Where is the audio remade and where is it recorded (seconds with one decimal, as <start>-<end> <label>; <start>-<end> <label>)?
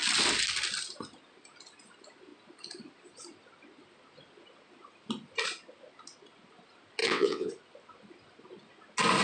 0.0-7.0 recorded; 7.0-7.5 remade; 7.5-9.2 recorded